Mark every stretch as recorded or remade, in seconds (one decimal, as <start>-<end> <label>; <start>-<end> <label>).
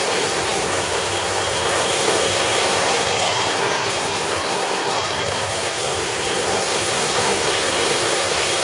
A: 0.0-8.6 remade